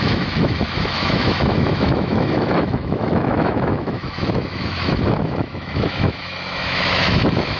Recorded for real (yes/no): no